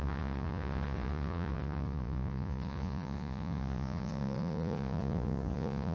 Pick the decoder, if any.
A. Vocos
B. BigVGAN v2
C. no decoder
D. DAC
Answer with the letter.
A